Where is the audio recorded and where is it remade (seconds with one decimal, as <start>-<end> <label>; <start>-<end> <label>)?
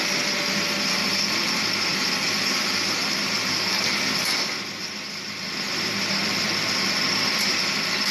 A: 0.0-8.1 recorded